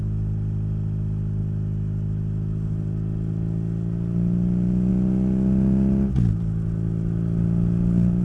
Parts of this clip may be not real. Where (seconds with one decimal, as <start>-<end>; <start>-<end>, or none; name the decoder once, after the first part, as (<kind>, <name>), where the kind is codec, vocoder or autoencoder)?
none